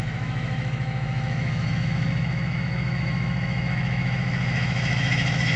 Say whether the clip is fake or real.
fake